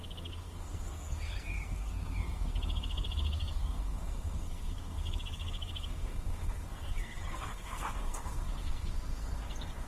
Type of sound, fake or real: fake